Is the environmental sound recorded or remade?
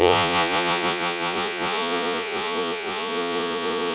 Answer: remade